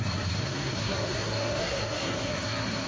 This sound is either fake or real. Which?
fake